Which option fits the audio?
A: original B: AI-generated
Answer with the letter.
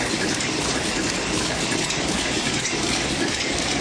B